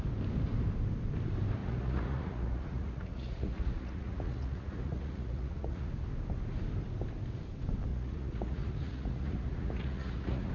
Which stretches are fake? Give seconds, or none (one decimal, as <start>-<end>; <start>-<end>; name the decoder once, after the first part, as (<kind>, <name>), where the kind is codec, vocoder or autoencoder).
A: 1.6-5.9 (vocoder, Vocos); 7.9-10.5